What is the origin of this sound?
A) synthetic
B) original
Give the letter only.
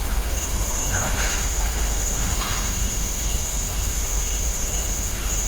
A